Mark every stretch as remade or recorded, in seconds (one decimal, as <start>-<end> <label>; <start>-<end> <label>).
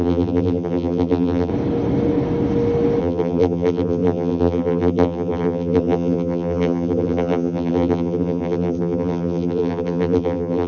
0.0-1.5 remade; 1.5-3.0 recorded; 3.0-10.7 remade